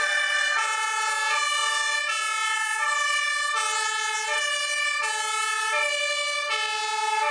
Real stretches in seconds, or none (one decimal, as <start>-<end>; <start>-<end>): 0.0-7.3